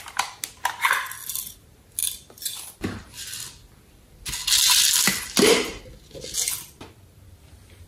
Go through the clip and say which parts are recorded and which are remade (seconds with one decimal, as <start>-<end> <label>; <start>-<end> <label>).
0.0-7.9 recorded